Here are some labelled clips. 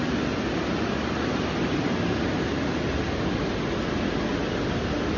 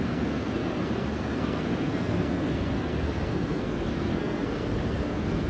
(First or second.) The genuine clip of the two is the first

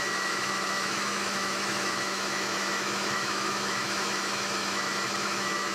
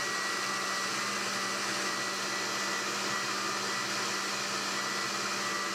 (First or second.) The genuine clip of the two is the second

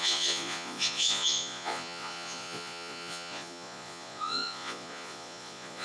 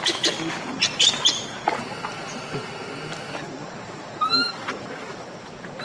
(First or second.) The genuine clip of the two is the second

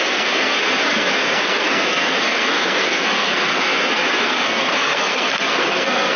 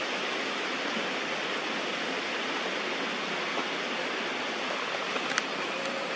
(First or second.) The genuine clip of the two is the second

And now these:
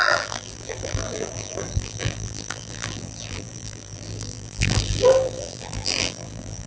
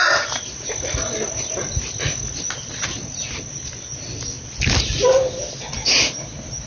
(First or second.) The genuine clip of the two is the second